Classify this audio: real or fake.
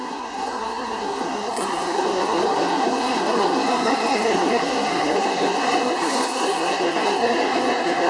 fake